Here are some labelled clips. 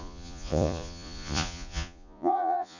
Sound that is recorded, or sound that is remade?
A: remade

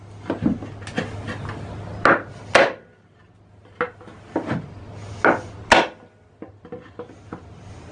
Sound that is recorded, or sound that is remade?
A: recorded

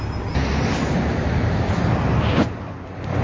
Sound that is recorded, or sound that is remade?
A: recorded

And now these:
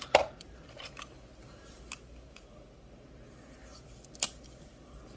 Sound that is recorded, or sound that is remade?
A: recorded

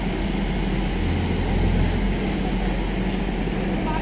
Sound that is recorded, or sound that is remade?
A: recorded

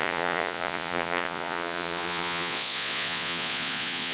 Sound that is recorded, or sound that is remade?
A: remade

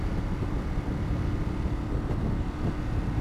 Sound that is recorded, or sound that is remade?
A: recorded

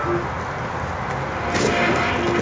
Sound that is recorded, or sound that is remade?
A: recorded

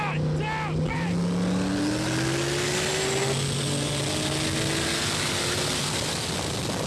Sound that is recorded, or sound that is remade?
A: recorded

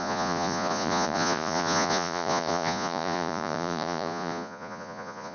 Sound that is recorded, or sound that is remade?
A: remade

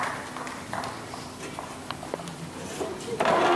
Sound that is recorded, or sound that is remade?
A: recorded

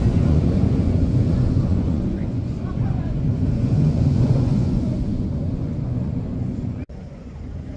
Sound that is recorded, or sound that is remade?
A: remade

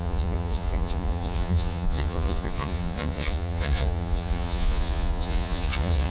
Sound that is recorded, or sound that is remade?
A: remade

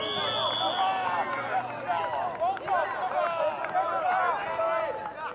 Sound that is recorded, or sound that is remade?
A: recorded